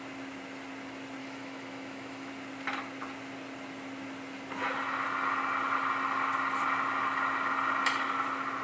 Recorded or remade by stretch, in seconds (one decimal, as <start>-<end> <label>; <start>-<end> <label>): 0.0-1.2 recorded; 1.2-2.3 remade; 2.3-8.6 recorded